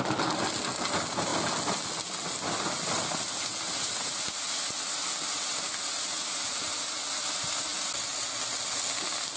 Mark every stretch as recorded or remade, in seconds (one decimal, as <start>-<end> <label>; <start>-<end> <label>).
0.0-9.4 recorded